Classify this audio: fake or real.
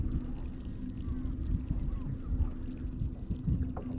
real